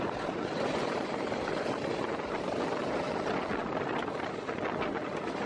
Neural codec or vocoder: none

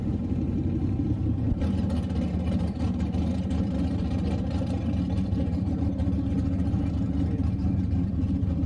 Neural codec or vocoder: vocoder, BigVGAN v2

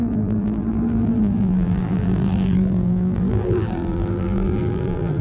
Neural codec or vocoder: vocoder, BigVGAN v2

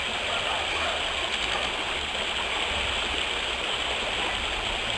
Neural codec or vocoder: none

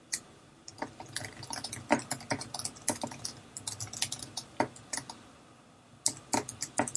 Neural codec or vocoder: none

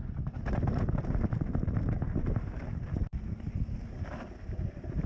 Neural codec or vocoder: none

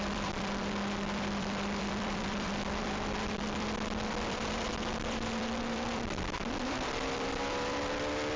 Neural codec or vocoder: vocoder, BigVGAN v2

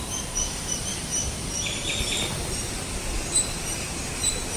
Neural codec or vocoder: vocoder, BigVGAN v2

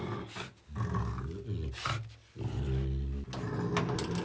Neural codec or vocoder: none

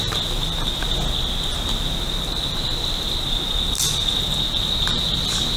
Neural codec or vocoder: none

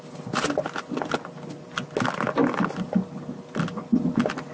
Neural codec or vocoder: none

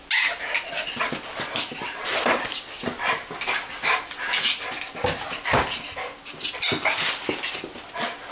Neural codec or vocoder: none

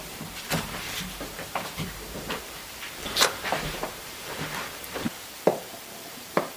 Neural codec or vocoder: vocoder, BigVGAN v2